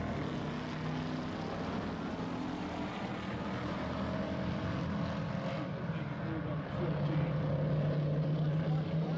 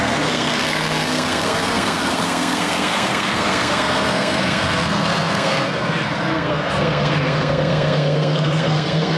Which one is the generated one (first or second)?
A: second